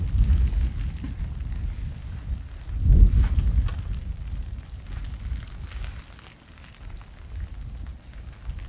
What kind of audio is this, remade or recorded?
recorded